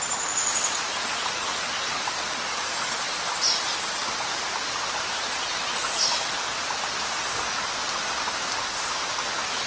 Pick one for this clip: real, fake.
real